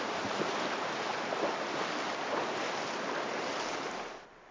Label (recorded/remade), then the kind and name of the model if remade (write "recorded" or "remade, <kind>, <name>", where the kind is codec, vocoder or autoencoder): recorded